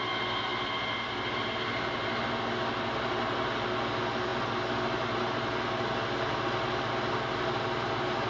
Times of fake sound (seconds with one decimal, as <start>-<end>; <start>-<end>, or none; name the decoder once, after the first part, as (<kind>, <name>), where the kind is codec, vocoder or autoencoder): none